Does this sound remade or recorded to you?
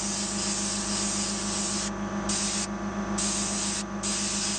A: recorded